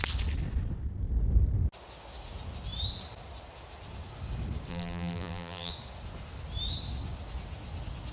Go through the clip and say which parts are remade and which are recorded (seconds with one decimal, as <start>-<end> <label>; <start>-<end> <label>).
0.0-4.7 recorded; 4.7-5.7 remade; 5.7-8.1 recorded